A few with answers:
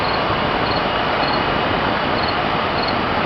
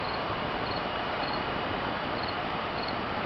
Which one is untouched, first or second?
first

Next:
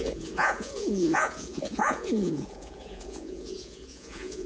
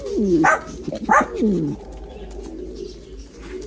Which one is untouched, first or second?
second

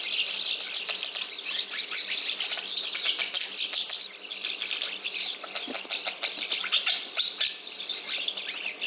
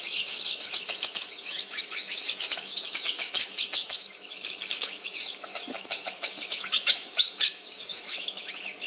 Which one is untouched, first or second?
first